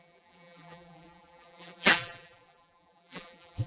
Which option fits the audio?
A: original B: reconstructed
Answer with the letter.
B